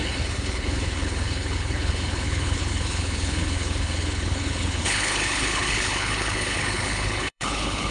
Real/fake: fake